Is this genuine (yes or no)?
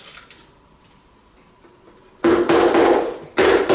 yes